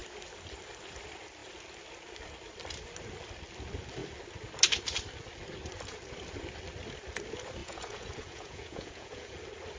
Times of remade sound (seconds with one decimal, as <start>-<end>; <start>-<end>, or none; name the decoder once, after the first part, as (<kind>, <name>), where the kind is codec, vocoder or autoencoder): 7.6-9.4 (vocoder, Vocos)